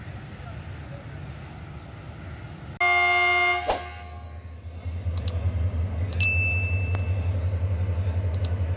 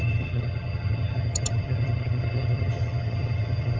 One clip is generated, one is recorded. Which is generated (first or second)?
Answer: second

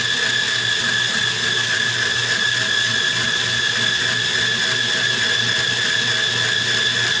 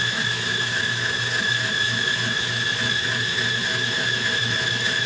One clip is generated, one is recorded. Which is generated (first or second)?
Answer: second